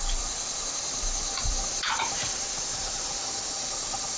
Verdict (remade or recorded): remade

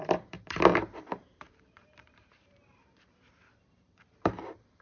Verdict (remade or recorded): remade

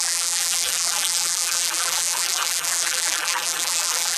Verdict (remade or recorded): remade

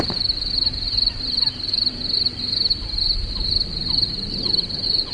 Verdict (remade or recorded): remade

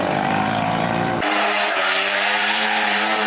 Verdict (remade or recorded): remade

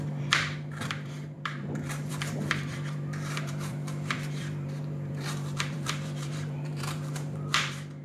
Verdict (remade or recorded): remade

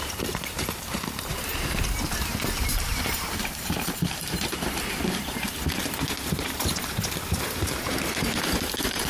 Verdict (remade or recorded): remade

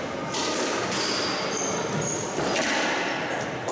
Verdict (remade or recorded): recorded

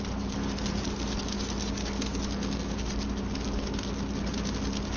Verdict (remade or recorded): recorded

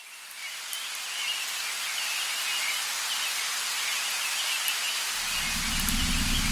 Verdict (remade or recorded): recorded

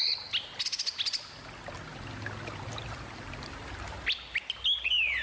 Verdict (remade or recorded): recorded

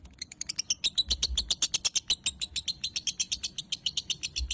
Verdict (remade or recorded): recorded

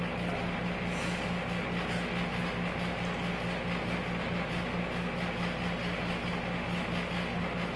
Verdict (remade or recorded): recorded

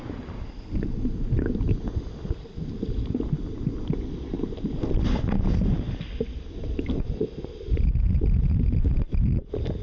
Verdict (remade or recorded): recorded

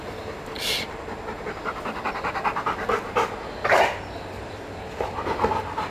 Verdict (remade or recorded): recorded